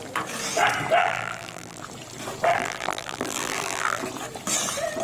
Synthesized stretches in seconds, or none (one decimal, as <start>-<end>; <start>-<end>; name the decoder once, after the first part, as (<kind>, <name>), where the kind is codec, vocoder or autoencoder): 1.0-1.8 (vocoder, BigVGAN v2); 2.5-4.0